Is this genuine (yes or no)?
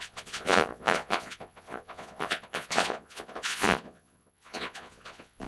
no